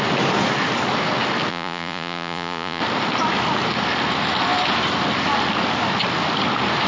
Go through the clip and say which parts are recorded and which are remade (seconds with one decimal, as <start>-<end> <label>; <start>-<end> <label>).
0.0-1.5 recorded; 1.5-2.8 remade; 2.8-6.9 recorded